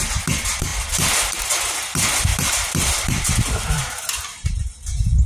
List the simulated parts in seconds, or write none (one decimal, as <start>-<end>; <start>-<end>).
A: 2.3-3.8